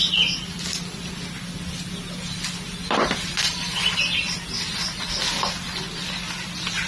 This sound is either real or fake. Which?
real